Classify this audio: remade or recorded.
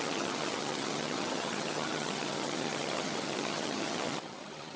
remade